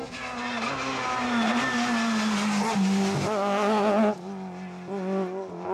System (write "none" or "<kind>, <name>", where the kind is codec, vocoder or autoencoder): none